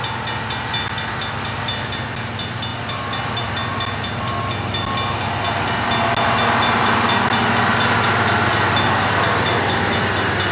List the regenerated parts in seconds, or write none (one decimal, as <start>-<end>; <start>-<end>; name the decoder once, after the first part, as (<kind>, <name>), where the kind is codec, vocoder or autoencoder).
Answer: 8.5-9.4 (vocoder, BigVGAN v2)